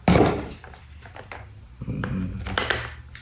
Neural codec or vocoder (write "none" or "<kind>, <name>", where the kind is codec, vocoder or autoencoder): none